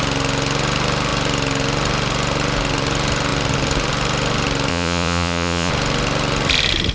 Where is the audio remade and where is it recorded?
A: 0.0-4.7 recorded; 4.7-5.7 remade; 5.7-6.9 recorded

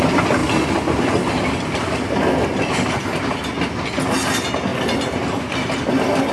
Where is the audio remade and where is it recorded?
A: 0.0-6.3 recorded

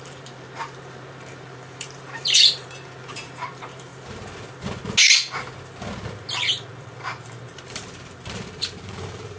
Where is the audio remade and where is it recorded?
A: 0.0-3.9 remade; 3.9-6.2 recorded; 6.2-9.4 remade

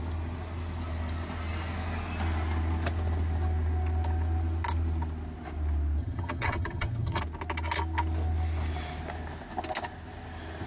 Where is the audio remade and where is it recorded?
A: 0.0-6.0 recorded; 6.0-7.2 remade; 7.2-10.7 recorded

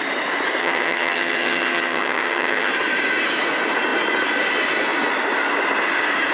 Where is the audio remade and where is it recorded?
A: 0.0-0.6 recorded; 0.6-2.7 remade; 2.7-6.3 recorded

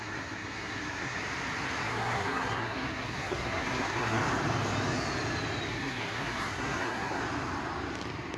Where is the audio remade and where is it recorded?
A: 0.0-1.2 remade; 1.2-1.8 recorded; 1.8-4.2 remade; 4.2-5.7 recorded; 5.7-7.2 remade; 7.2-8.4 recorded